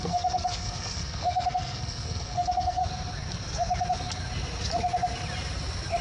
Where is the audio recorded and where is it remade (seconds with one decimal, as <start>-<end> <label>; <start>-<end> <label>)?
0.0-2.8 remade; 2.8-6.0 recorded